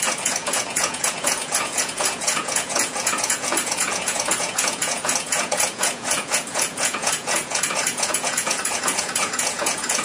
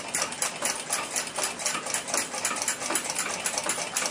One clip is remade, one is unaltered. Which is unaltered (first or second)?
second